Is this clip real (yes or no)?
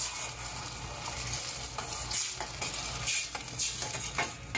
yes